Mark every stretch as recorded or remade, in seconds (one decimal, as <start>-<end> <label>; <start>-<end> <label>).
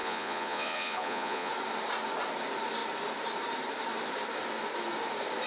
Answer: 0.0-1.5 remade; 1.5-5.5 recorded